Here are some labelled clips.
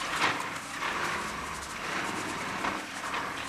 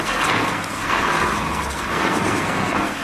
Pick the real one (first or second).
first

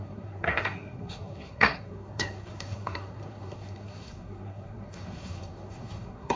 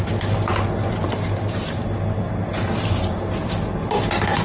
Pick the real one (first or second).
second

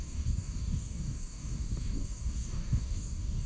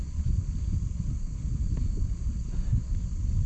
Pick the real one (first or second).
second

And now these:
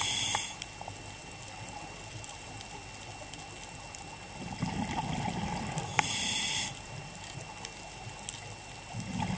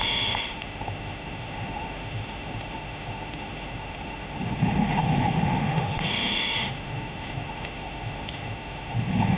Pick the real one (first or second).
first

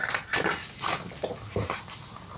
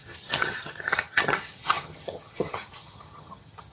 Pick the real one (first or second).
first